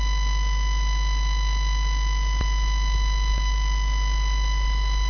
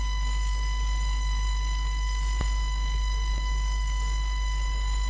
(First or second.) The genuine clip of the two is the first